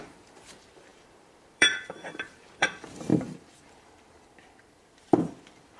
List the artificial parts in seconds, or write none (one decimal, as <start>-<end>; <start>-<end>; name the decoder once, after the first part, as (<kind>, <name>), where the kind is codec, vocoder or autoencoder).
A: 0.0-5.8 (vocoder, BigVGAN v2)